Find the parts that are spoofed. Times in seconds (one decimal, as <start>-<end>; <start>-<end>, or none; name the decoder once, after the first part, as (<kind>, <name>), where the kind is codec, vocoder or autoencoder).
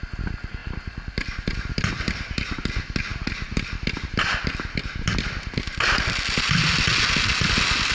0.6-2.6 (vocoder, BigVGAN v2); 3.1-6.9